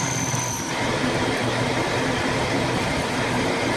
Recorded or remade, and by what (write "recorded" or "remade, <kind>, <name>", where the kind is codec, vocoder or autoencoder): remade, vocoder, BigVGAN v2